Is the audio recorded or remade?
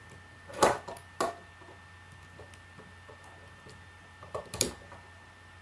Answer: recorded